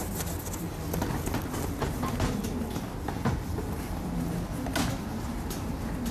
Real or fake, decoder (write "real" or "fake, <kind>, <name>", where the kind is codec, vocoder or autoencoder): real